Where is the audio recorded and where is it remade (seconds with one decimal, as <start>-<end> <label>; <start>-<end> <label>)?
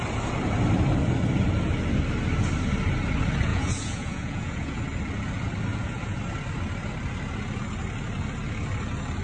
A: 0.0-3.5 recorded; 3.5-4.8 remade; 4.8-5.7 recorded; 5.7-6.2 remade; 6.2-9.2 recorded